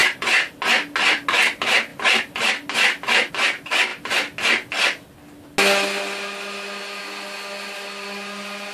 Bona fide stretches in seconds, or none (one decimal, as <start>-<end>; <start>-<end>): 0.0-8.7